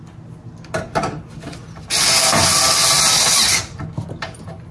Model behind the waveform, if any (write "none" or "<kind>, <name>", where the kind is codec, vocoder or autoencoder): none